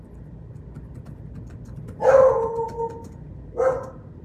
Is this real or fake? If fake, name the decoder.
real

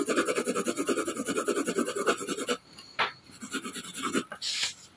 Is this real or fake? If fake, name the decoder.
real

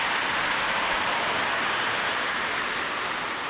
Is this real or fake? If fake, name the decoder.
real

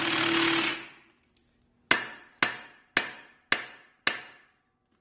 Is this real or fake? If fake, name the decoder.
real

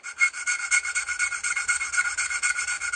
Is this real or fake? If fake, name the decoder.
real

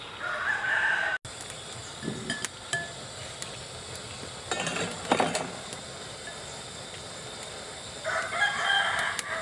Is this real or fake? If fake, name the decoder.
real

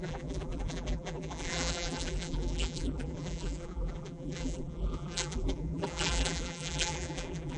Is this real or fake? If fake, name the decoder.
fake, vocoder, BigVGAN v2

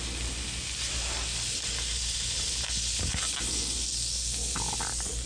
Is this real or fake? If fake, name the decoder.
real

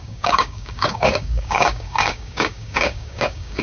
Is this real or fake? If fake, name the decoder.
fake, codec, DAC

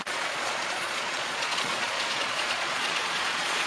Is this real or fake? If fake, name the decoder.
fake, vocoder, Vocos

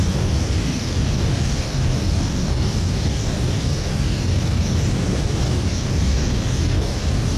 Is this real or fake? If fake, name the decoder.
fake, codec, DAC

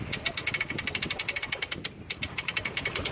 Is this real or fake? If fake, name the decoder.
real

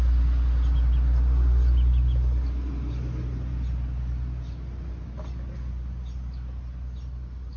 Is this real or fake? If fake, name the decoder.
real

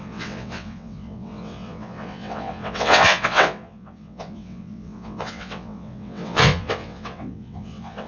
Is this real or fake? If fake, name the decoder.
fake, vocoder, WaveNeXt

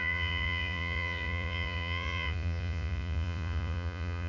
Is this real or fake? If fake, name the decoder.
fake, vocoder, Vocos